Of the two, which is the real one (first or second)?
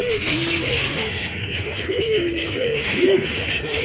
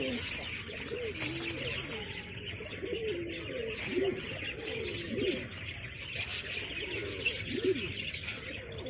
second